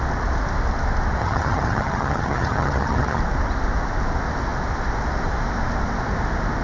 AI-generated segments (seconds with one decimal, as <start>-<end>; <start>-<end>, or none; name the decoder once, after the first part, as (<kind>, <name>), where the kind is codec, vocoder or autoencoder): 1.2-3.2 (vocoder, HiFi-GAN)